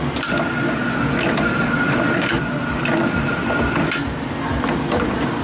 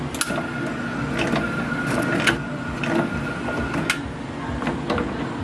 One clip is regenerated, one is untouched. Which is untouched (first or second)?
second